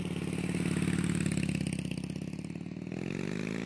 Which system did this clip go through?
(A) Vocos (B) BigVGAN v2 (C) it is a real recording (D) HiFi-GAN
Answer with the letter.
C